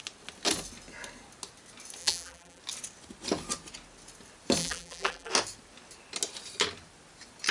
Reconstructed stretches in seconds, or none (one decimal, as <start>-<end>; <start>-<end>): 2.0-2.6; 4.6-5.3